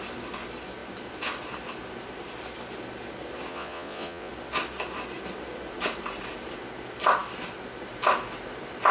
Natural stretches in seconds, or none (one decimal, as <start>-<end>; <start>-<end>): 0.0-3.5; 4.3-8.9